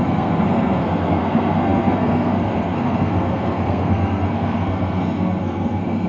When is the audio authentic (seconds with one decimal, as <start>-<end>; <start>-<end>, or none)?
none